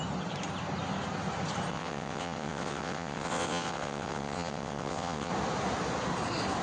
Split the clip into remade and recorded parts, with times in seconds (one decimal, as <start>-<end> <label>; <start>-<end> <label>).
0.0-1.7 recorded; 1.7-5.3 remade; 5.3-6.6 recorded